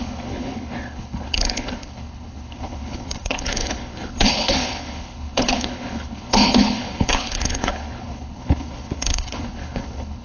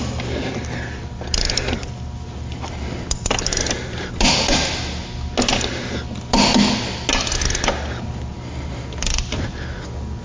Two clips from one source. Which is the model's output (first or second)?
first